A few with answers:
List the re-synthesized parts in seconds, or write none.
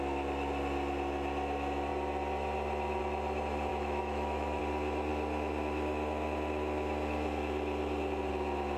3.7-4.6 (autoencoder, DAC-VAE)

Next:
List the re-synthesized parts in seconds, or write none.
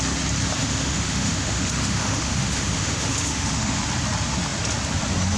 0.6-3.8 (autoencoder, DAC-VAE)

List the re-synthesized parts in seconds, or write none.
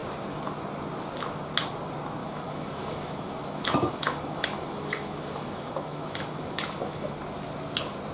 2.2-7.1 (autoencoder, DAC-VAE)